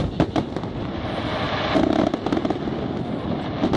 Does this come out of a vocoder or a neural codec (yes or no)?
no